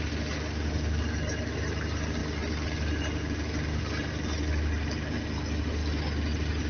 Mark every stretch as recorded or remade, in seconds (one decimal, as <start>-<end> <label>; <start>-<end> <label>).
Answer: 0.0-6.7 recorded